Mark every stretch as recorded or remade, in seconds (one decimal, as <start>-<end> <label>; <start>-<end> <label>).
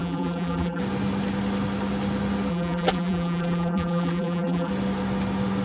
0.0-0.8 remade; 0.8-2.5 recorded; 2.5-4.7 remade; 4.7-5.6 recorded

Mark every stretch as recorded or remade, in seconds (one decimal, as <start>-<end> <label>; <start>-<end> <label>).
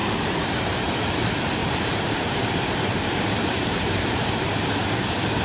0.0-0.8 remade; 0.8-1.6 recorded; 1.6-4.8 remade; 4.8-5.4 recorded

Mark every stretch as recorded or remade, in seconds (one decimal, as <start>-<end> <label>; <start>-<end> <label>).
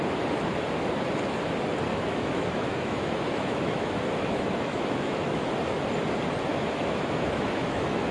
0.0-1.9 recorded; 1.9-5.5 remade; 5.5-6.5 recorded; 6.5-8.1 remade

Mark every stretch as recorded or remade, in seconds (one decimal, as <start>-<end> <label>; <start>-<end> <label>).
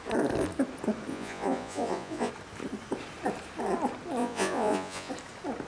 0.0-1.1 recorded; 1.1-2.3 remade; 2.3-4.2 recorded; 4.2-5.1 remade; 5.1-5.7 recorded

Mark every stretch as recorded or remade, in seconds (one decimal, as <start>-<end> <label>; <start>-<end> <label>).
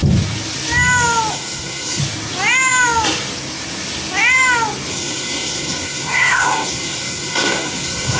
0.0-1.3 recorded; 1.3-2.0 remade; 2.0-4.9 recorded; 4.9-8.2 remade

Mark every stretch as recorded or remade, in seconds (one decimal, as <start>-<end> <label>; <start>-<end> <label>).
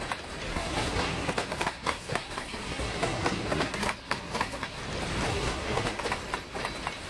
0.0-0.5 recorded; 0.5-4.8 remade; 4.8-5.3 recorded; 5.3-6.0 remade; 6.0-7.1 recorded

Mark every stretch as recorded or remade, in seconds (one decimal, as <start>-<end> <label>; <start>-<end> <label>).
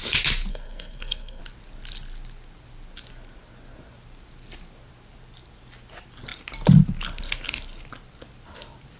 0.0-0.5 recorded; 0.5-1.4 remade; 1.4-9.0 recorded